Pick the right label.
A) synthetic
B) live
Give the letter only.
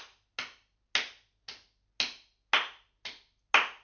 B